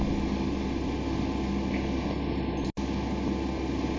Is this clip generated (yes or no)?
no